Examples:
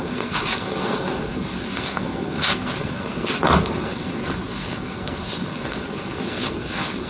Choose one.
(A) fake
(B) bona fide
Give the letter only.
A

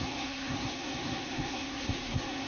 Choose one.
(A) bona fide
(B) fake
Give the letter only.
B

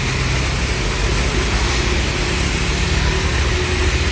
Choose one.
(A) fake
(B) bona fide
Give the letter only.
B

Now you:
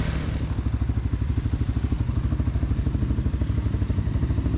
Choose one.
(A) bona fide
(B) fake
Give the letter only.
A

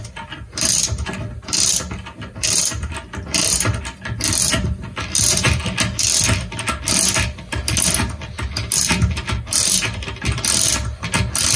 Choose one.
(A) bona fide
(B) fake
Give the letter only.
A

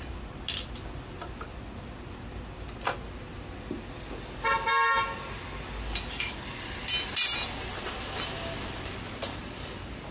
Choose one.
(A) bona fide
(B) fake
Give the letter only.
A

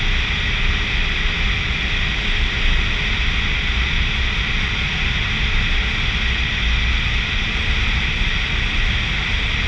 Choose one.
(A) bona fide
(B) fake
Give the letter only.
A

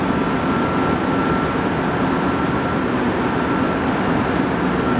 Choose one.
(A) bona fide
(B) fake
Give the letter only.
A